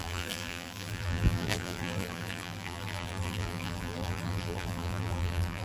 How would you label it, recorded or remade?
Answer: remade